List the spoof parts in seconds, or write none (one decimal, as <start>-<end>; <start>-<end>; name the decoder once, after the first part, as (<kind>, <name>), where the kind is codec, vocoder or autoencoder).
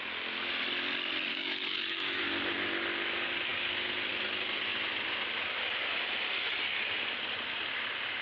1.3-2.2 (autoencoder, DAC-VAE)